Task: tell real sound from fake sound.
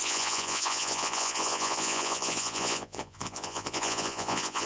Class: fake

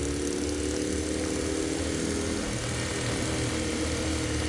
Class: real